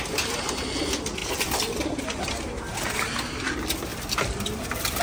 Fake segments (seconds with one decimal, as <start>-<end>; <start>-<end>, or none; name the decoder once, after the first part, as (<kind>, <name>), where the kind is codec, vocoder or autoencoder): 3.9-5.0 (vocoder, BigVGAN v2)